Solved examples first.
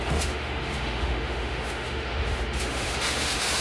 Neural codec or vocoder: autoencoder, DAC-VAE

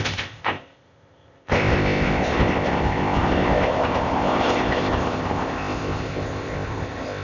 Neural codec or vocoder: codec, ZipCodec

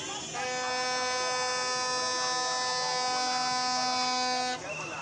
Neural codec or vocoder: none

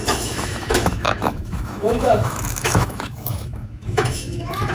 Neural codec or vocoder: autoencoder, DAC-VAE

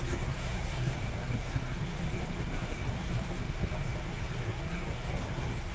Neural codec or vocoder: codec, SNAC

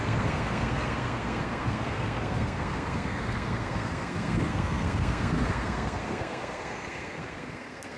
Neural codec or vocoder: codec, SNAC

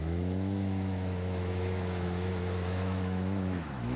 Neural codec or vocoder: autoencoder, DAC-VAE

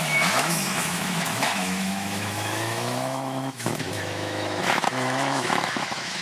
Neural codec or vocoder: autoencoder, DAC-VAE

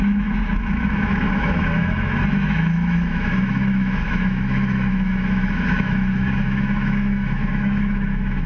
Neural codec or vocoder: autoencoder, DAC-VAE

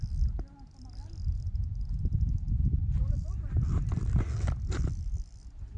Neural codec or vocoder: none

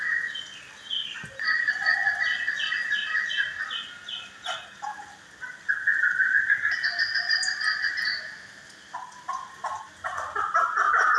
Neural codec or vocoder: none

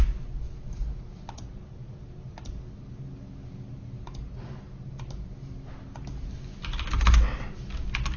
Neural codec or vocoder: none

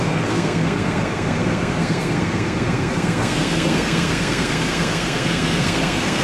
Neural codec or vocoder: codec, SNAC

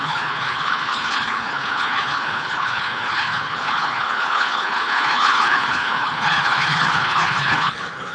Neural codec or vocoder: codec, HILCodec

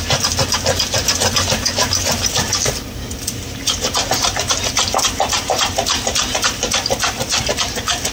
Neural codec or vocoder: none